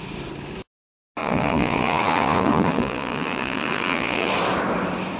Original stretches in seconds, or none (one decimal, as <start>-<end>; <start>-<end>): 0.0-1.2; 4.3-5.2